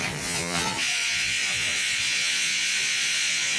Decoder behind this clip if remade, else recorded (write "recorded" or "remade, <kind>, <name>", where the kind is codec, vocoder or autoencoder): remade, vocoder, Vocos